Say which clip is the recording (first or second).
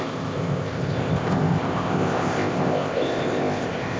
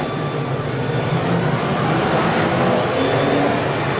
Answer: second